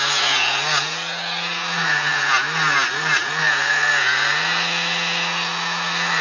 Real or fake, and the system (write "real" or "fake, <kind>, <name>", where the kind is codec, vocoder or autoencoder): real